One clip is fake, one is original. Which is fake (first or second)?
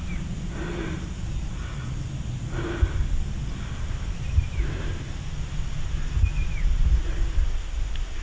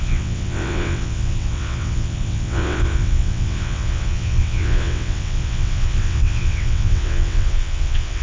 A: second